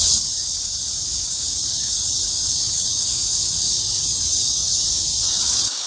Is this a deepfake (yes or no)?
yes